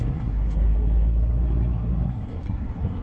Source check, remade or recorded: remade